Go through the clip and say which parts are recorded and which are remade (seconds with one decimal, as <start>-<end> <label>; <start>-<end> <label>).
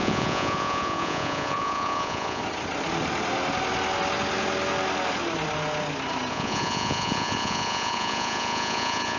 0.0-2.4 remade; 2.4-6.3 recorded; 6.3-9.2 remade